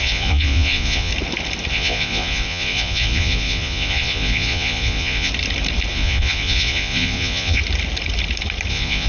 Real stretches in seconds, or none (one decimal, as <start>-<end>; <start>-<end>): 1.1-1.7; 5.3-5.9; 7.6-8.7